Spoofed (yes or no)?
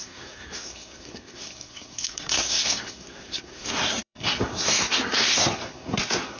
yes